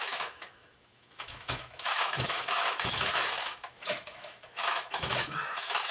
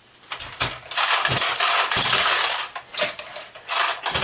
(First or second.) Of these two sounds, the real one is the second